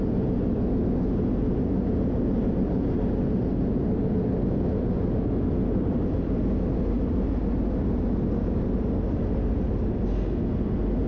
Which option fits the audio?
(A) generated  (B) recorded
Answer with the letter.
B